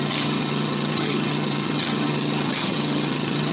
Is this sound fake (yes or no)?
yes